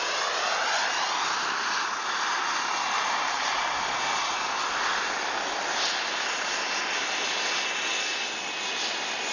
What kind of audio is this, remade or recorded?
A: recorded